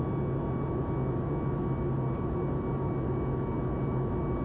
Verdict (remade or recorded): recorded